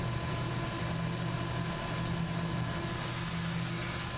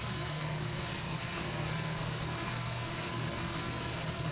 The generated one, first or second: second